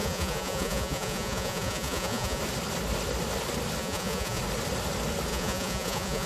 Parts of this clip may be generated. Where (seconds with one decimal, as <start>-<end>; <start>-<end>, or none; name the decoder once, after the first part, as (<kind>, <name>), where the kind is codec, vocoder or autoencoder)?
0.0-2.4 (vocoder, Vocos); 3.8-4.4; 5.3-6.3